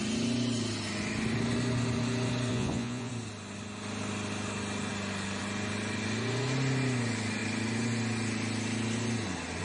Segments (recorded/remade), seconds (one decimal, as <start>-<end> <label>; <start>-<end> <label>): 0.0-2.5 recorded; 2.5-3.1 remade; 3.1-9.6 recorded

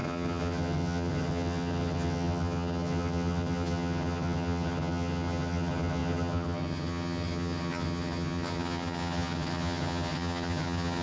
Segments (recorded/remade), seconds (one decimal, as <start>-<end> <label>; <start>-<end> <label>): 0.0-11.0 remade

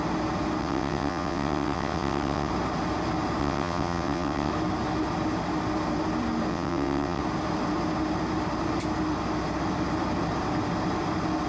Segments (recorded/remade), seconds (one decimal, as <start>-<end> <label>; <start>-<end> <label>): 0.0-0.6 recorded; 0.6-2.5 remade; 2.5-3.4 recorded; 3.4-4.5 remade; 4.5-6.5 recorded; 6.5-7.2 remade; 7.2-11.5 recorded

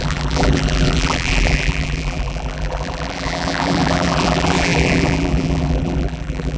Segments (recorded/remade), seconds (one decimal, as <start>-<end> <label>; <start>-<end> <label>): 0.0-6.6 remade

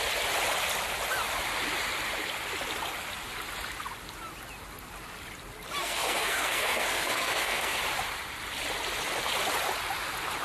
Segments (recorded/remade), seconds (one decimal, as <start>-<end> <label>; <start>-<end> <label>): 0.0-5.8 recorded; 5.8-7.8 remade; 7.8-10.4 recorded

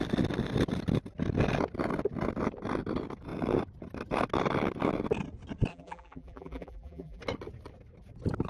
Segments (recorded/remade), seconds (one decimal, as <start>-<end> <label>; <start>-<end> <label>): 0.0-5.7 recorded; 5.7-7.2 remade; 7.2-8.5 recorded

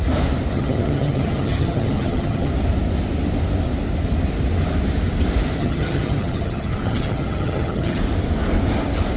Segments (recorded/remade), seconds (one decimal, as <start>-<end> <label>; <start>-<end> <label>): 0.0-0.5 recorded; 0.5-2.5 remade; 2.5-5.6 recorded; 5.6-8.0 remade; 8.0-9.2 recorded

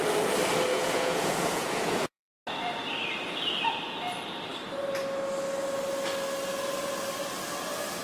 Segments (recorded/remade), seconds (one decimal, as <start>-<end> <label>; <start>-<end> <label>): 0.0-0.7 recorded; 0.7-2.3 remade; 2.3-8.0 recorded